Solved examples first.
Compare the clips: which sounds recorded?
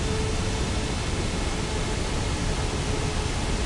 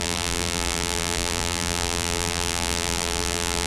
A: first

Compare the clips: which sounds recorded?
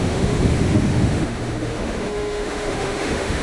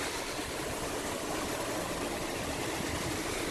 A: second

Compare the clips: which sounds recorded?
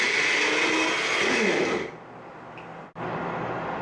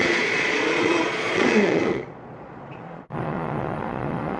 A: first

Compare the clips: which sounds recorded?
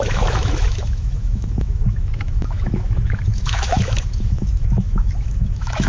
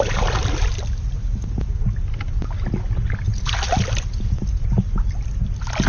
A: second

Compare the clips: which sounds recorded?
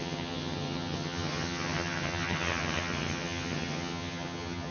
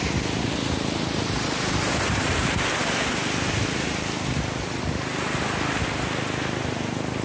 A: second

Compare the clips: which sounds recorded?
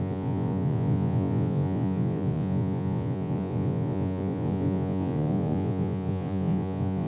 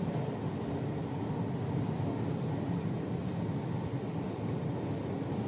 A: second